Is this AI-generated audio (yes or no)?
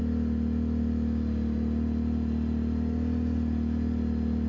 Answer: no